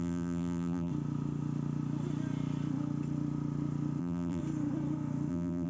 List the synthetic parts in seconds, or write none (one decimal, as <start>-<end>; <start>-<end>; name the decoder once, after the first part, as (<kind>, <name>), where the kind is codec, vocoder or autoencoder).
0.0-0.9 (vocoder, BigVGAN v2); 4.0-4.4; 5.3-5.7